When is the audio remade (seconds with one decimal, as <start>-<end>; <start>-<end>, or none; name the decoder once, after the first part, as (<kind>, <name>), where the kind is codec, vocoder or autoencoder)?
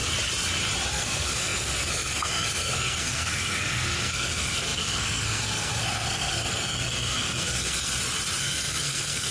0.9-7.9 (codec, SNAC); 8.4-9.3